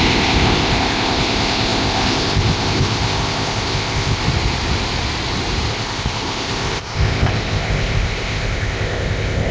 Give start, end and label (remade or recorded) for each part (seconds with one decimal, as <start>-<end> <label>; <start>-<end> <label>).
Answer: 0.0-4.2 remade; 4.2-5.7 recorded; 5.7-9.5 remade